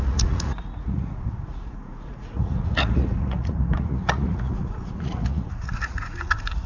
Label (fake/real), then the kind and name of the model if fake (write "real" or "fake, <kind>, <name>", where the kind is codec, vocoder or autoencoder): fake, vocoder, Vocos